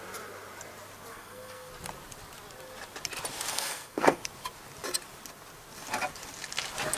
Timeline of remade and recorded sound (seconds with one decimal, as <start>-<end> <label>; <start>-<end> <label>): 0.0-1.1 recorded; 1.1-1.7 remade; 1.7-3.5 recorded; 3.5-4.2 remade; 4.2-7.0 recorded

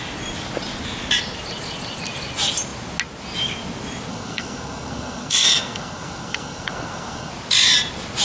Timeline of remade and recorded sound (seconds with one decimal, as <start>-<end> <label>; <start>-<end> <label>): 0.0-4.1 recorded; 4.1-7.3 remade; 7.3-8.2 recorded